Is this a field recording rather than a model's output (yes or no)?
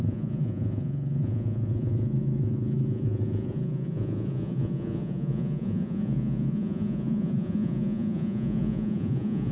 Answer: no